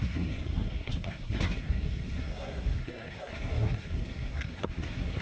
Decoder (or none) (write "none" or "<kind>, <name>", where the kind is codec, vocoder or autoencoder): codec, SNAC